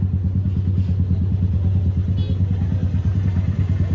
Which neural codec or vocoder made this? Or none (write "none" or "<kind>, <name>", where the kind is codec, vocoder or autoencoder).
none